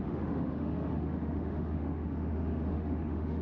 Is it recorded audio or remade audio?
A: remade